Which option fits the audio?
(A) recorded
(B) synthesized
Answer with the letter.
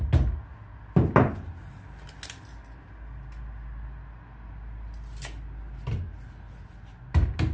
A